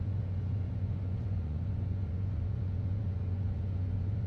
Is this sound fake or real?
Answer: fake